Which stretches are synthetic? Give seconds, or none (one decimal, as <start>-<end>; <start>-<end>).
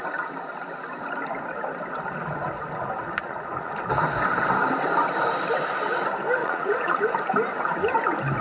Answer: 3.2-3.7; 6.4-7.0